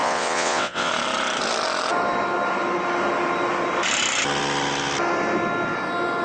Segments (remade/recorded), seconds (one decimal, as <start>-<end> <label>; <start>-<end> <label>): 0.0-0.9 remade; 0.9-6.2 recorded